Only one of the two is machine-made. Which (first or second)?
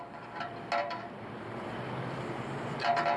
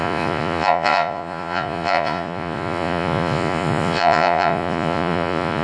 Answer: second